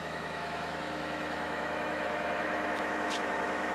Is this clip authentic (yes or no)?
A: no